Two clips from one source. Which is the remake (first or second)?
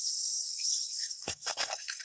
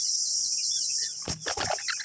first